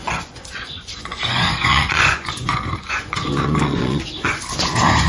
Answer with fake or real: fake